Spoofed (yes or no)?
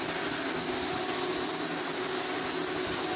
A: no